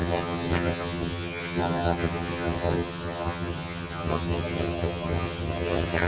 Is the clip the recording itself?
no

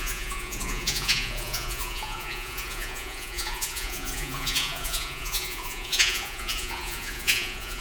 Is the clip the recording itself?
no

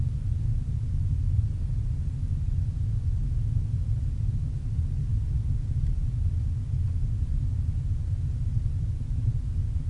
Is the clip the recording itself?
yes